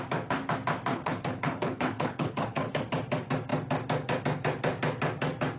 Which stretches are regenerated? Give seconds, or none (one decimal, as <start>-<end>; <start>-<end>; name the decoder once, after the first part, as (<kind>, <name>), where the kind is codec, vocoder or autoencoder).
0.9-2.8 (codec, HILCodec)